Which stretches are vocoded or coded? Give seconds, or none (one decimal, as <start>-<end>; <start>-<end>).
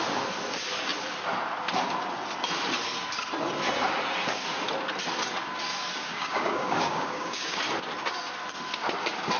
6.0-7.6